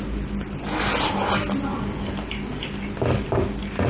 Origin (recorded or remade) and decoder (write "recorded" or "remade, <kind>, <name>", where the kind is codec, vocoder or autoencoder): recorded